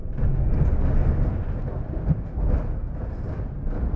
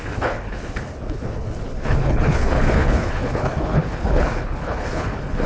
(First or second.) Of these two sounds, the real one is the first